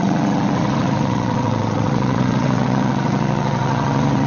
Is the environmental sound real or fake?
fake